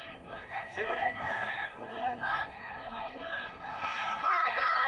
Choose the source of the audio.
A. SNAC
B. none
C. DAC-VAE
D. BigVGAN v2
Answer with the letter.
A